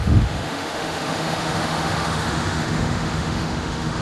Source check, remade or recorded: remade